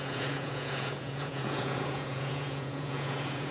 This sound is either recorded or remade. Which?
remade